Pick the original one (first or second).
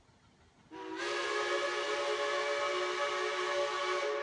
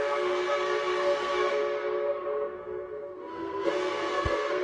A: first